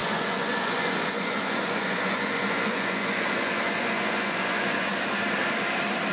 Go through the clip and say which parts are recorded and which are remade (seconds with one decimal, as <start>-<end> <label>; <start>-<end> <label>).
0.0-4.9 remade; 4.9-6.1 recorded